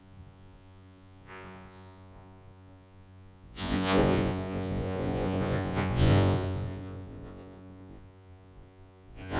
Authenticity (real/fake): fake